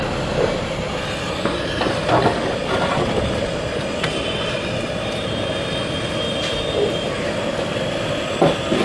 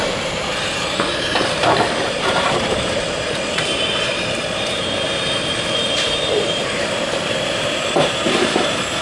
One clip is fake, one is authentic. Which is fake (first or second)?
second